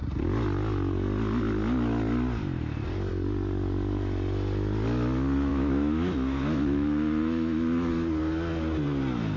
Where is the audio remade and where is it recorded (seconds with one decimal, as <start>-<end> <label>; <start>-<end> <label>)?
0.0-5.5 recorded; 5.5-7.9 remade; 7.9-9.4 recorded